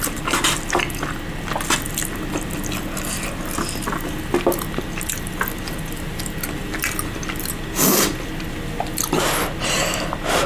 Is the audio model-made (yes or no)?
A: no